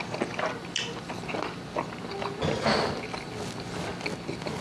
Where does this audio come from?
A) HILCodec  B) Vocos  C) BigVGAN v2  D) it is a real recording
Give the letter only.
D